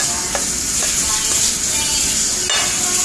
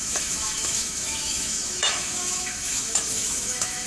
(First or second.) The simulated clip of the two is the second